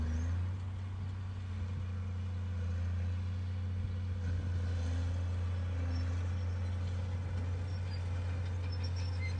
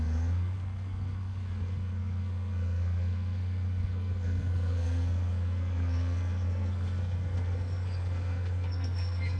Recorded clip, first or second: first